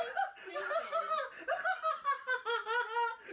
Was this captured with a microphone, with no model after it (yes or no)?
yes